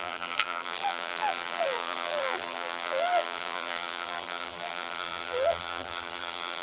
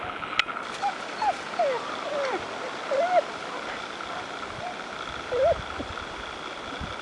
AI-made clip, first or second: first